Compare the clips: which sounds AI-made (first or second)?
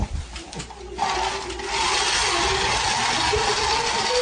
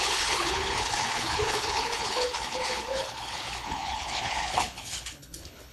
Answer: second